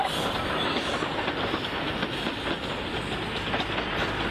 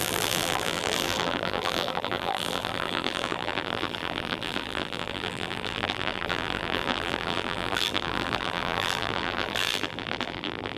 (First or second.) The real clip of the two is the first